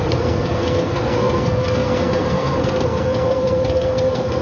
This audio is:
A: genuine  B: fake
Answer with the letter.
B